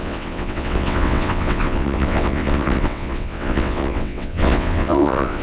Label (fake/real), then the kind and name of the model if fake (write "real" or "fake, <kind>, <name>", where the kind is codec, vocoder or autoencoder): fake, vocoder, WaveNeXt